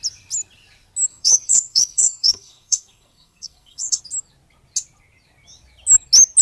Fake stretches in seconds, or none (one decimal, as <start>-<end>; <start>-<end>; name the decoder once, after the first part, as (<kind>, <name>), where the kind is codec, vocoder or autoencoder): 1.1-4.0 (codec, SNAC)